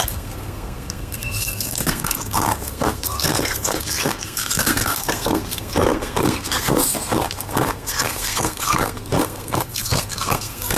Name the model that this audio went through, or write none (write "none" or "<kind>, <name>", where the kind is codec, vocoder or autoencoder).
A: codec, SNAC